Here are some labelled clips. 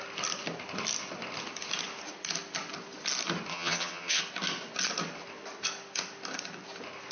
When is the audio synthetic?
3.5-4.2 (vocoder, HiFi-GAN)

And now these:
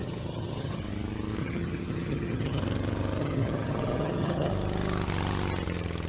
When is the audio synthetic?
0.0-0.8 (vocoder, HiFi-GAN); 1.4-2.6; 3.2-4.5

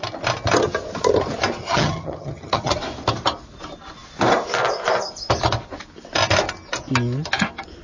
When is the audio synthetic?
1.6-2.7 (vocoder, HiFi-GAN)

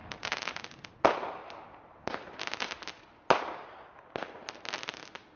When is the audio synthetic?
none